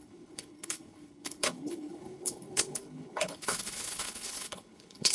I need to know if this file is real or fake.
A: fake